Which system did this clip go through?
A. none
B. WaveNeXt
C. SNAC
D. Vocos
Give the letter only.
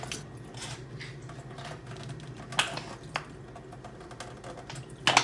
A